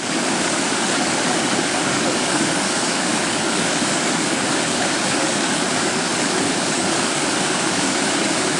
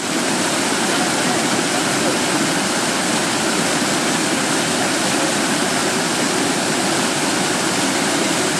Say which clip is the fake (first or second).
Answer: first